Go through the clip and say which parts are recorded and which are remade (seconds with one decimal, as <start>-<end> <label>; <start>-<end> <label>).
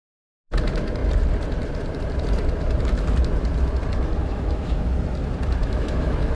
0.0-4.2 recorded; 4.2-4.9 remade; 4.9-5.6 recorded; 5.6-6.3 remade